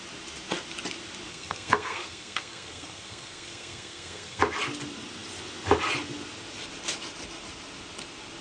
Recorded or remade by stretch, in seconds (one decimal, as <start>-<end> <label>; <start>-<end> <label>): 0.0-1.3 recorded; 1.3-4.4 remade; 4.4-8.4 recorded